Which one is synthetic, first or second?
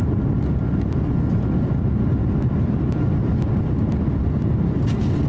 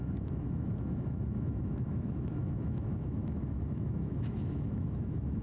second